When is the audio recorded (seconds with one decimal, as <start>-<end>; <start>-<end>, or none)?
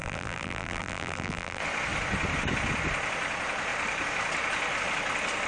1.6-5.5